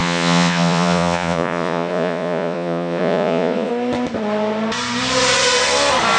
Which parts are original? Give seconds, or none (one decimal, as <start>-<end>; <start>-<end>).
3.7-6.2